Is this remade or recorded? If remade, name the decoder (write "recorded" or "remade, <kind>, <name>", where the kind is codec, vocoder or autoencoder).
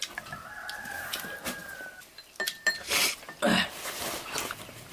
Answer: recorded